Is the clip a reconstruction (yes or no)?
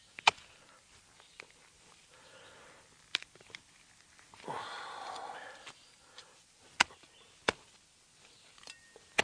no